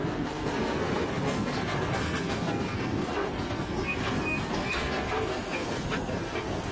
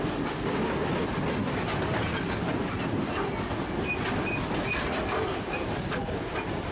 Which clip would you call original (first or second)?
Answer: second